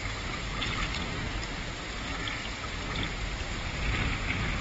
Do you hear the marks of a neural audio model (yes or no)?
no